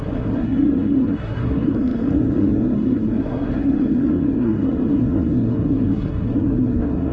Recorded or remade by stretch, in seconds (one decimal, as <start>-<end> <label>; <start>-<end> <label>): 0.0-7.1 remade